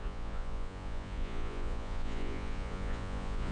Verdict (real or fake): fake